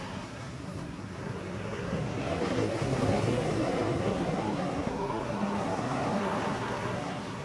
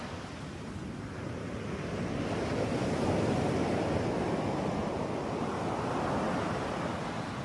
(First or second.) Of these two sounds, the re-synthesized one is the first